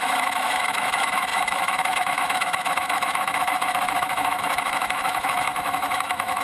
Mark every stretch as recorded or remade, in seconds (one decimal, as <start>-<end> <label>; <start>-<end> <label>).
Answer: 0.0-6.4 remade